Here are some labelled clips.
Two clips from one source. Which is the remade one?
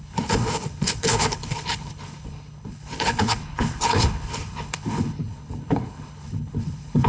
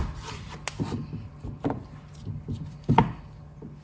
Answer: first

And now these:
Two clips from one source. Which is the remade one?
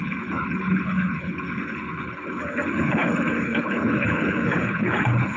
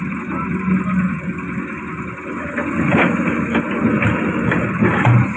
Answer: first